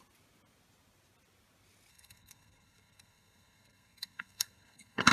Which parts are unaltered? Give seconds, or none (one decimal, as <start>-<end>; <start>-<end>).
0.0-1.9